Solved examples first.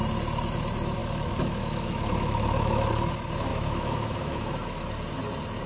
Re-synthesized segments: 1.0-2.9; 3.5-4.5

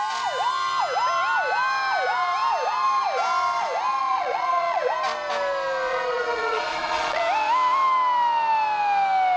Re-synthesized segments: 4.0-4.9; 5.9-7.2